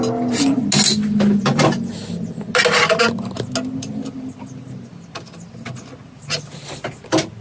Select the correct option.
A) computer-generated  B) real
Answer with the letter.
B